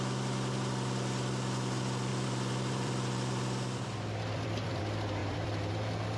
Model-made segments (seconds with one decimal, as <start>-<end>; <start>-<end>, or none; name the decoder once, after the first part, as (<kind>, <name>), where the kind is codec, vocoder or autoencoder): 2.1-4.8 (vocoder, BigVGAN v2); 5.2-5.7